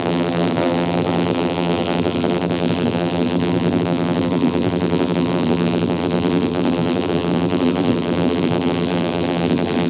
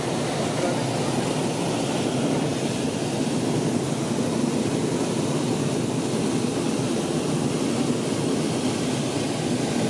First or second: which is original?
second